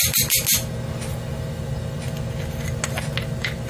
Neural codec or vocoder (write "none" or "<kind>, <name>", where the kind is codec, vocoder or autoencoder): none